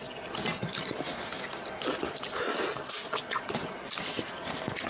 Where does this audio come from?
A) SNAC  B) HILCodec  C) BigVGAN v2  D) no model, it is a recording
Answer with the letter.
C